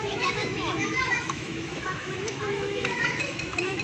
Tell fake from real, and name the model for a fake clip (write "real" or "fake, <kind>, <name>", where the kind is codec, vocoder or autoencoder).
fake, autoencoder, DAC-VAE